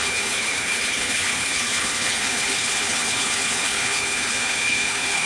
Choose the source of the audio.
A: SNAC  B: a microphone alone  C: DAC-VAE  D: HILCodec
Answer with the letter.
D